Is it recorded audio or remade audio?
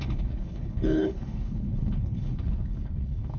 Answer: remade